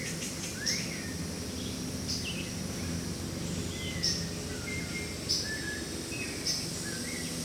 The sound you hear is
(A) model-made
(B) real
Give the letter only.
B